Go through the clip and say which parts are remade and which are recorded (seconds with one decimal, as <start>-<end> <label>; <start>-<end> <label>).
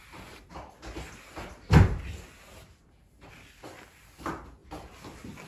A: 0.0-5.5 recorded